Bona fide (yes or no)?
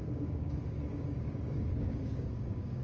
no